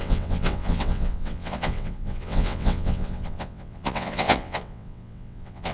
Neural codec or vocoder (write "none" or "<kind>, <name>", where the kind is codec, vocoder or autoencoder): vocoder, WaveNeXt